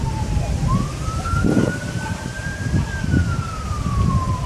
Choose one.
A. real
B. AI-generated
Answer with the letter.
B